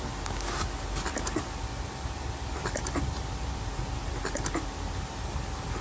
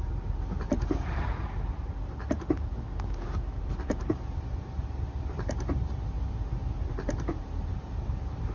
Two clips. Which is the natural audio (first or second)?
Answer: first